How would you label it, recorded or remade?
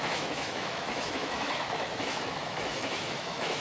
remade